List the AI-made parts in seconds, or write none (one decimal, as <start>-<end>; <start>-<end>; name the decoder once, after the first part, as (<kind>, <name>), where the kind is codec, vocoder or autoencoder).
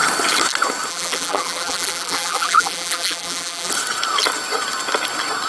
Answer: 0.9-3.7 (vocoder, BigVGAN v2)